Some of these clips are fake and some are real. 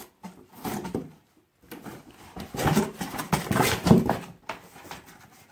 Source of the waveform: real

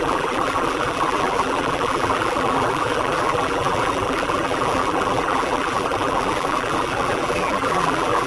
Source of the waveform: fake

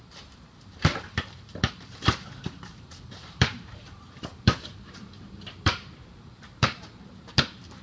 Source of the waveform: fake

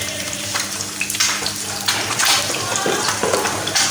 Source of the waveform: fake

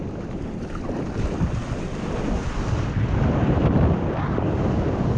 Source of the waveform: real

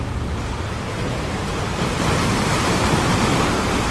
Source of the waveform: fake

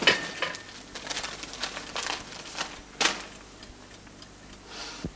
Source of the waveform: real